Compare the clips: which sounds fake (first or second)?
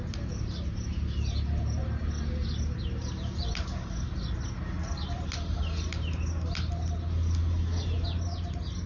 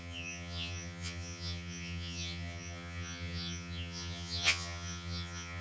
second